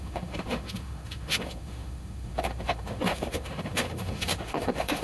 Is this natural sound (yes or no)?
no